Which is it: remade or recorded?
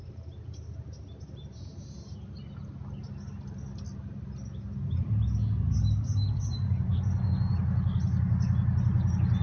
recorded